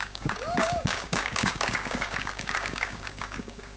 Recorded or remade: remade